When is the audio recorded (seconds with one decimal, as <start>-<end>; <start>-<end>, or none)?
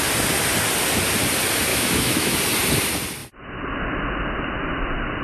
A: 0.0-1.7; 2.4-5.2